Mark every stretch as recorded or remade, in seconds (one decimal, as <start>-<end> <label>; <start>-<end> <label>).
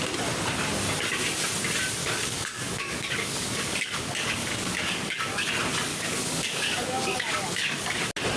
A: 0.0-2.0 recorded; 2.0-5.5 remade; 5.5-5.9 recorded; 5.9-7.9 remade; 7.9-8.4 recorded